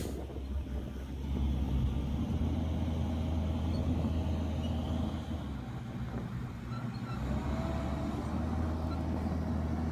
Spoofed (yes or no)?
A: no